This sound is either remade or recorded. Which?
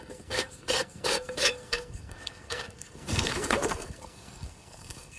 remade